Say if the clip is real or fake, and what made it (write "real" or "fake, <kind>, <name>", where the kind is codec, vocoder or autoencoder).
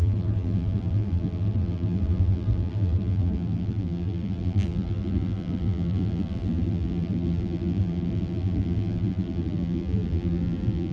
fake, vocoder, BigVGAN v2